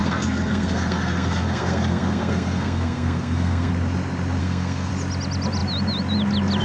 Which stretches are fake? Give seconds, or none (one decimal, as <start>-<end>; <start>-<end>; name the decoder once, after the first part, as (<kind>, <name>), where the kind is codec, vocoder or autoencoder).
0.0-3.7 (codec, SNAC); 4.4-4.9